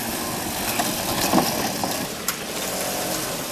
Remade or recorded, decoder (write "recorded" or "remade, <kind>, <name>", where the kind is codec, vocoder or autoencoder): recorded